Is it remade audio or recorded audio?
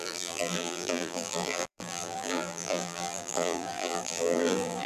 remade